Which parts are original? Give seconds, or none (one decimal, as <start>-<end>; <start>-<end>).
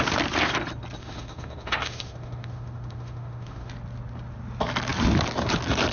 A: 0.0-1.0; 3.7-5.9